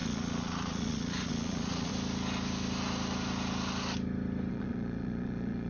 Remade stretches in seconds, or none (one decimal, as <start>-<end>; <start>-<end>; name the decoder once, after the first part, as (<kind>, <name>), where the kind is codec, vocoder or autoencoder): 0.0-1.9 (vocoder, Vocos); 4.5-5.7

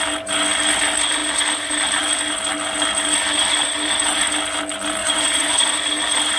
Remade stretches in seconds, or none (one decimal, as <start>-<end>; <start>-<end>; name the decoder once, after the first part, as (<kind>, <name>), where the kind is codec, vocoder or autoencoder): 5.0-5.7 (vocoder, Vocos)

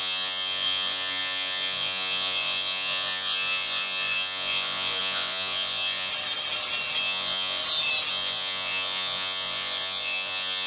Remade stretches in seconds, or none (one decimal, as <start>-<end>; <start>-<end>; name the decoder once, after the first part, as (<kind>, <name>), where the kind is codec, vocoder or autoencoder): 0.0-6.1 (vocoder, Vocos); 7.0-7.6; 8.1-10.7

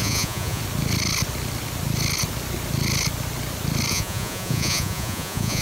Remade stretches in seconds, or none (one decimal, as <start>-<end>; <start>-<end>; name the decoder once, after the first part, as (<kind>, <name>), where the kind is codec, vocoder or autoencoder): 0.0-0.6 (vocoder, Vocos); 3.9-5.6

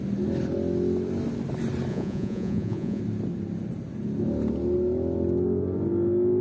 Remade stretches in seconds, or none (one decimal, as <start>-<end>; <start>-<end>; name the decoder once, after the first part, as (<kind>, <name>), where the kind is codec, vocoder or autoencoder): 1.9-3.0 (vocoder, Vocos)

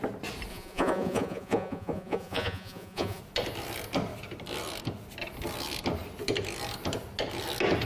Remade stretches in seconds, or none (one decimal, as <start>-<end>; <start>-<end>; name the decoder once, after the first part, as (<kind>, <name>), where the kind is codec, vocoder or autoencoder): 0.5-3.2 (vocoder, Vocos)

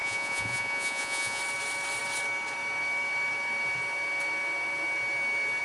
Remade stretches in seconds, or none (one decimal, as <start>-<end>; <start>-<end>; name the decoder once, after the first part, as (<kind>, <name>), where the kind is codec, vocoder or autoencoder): 0.0-1.4 (vocoder, Vocos)